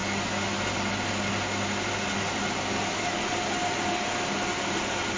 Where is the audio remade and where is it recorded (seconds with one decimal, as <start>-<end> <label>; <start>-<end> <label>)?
0.0-5.2 recorded